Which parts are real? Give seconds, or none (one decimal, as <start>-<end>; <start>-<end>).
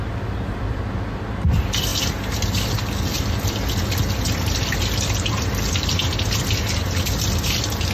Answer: 0.0-7.9